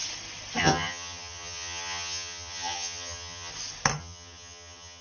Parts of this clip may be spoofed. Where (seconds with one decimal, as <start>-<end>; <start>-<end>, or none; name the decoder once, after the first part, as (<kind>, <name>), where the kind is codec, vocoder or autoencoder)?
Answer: 0.6-3.5 (vocoder, HiFi-GAN); 4.0-5.0